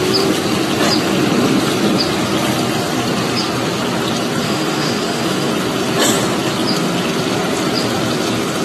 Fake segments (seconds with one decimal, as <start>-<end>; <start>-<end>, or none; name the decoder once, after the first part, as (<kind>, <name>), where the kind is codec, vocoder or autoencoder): 4.4-5.5 (autoencoder, DAC-VAE)